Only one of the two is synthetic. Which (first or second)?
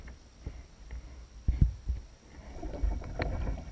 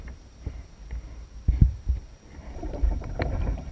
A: second